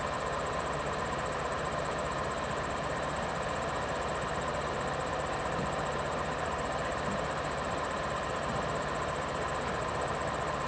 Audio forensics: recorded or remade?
remade